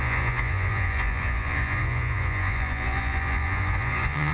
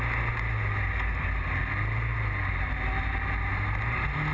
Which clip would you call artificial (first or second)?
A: first